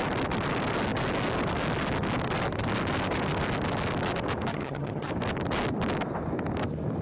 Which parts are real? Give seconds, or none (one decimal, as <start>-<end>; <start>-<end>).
0.0-4.5; 5.1-7.0